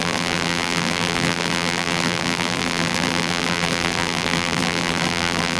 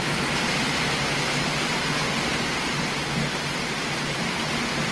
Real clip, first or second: second